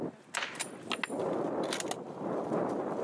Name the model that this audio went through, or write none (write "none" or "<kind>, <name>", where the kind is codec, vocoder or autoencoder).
none